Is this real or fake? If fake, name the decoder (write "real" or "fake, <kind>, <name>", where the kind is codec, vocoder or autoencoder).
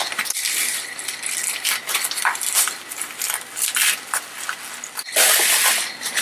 real